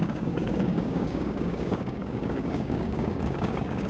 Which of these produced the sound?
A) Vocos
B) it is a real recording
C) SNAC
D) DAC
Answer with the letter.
D